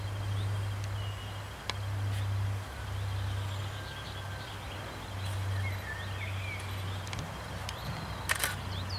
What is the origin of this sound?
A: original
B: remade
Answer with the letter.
A